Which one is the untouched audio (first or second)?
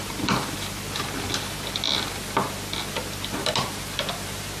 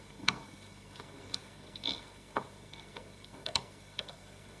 first